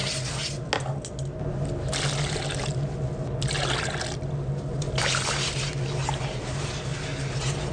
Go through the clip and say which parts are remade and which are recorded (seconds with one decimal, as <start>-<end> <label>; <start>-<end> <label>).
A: 0.0-7.7 recorded